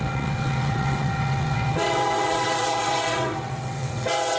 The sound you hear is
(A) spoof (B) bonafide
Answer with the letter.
A